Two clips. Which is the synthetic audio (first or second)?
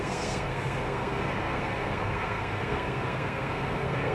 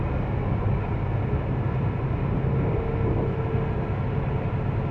first